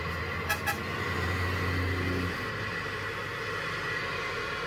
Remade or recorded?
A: recorded